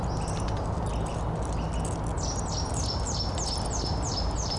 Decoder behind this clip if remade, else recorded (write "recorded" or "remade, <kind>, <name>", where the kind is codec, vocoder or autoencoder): recorded